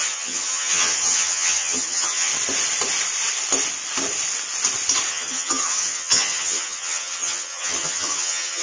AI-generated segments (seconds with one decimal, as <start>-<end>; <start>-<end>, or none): 0.0-2.3; 5.1-8.6